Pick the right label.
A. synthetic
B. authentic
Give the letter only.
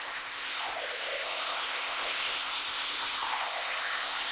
A